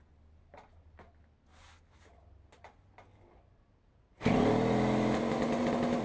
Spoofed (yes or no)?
no